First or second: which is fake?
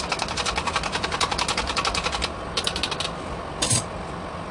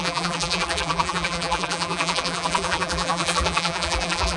second